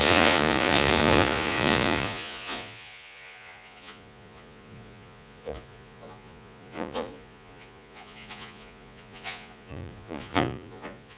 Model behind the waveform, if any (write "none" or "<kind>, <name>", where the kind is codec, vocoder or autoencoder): vocoder, Vocos